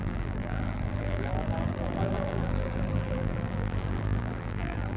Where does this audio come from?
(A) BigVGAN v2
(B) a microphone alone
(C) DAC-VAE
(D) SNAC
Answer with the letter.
A